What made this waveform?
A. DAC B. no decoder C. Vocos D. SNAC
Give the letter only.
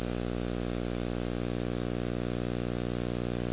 B